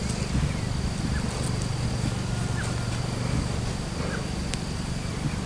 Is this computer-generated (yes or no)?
no